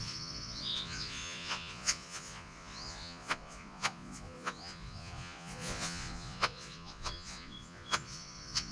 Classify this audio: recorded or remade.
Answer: remade